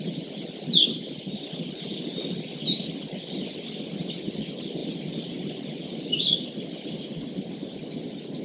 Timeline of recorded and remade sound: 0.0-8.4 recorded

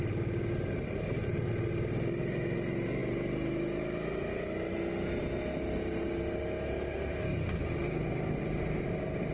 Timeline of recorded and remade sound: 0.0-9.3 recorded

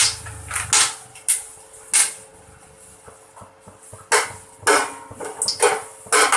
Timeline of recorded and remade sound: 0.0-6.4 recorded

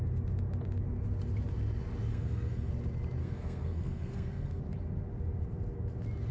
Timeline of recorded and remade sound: 0.0-2.1 recorded; 2.1-2.7 remade; 2.7-3.2 recorded; 3.2-4.6 remade; 4.6-6.3 recorded

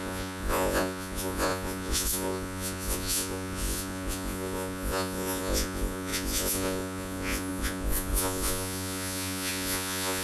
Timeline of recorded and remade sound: 0.0-10.2 remade

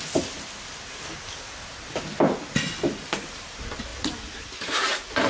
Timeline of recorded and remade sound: 0.0-5.3 recorded

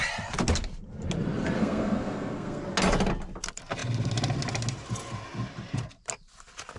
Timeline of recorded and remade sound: 0.0-1.6 recorded; 1.6-2.6 remade; 2.6-6.8 recorded

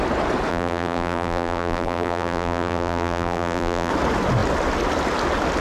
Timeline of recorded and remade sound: 0.0-0.5 recorded; 0.5-3.9 remade; 3.9-5.6 recorded